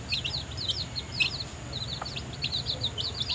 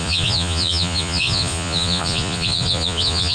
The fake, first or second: second